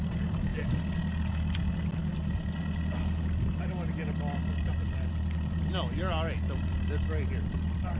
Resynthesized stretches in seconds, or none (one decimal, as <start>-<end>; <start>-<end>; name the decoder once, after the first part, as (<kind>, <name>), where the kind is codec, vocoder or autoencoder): none